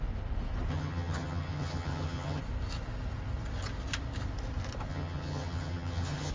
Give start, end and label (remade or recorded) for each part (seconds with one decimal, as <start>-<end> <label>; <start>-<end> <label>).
0.0-0.7 recorded; 0.7-2.4 remade; 2.4-4.9 recorded; 4.9-6.3 remade